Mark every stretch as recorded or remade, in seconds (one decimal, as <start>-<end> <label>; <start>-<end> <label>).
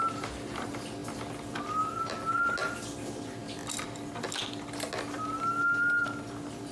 0.0-6.7 recorded